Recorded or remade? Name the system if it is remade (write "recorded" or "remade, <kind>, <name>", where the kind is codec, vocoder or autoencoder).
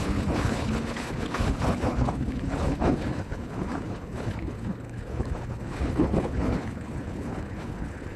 remade, codec, HILCodec